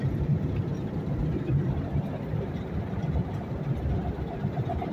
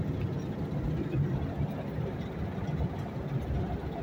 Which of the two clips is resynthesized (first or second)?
first